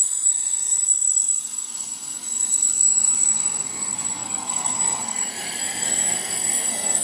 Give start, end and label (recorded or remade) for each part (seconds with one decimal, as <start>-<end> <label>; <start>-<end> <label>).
0.0-7.0 remade